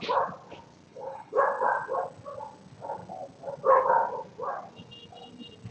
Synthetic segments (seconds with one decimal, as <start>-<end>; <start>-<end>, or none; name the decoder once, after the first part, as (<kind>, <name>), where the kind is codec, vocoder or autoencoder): 0.9-1.4 (codec, HILCodec)